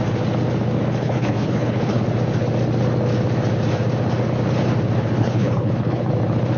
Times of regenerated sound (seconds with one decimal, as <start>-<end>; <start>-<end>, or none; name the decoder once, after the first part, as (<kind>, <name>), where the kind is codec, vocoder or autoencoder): 1.0-2.0 (codec, HILCodec); 5.2-6.1